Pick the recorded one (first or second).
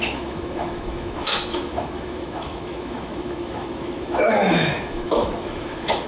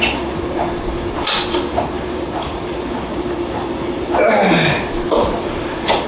second